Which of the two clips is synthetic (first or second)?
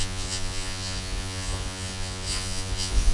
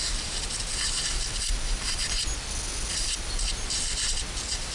first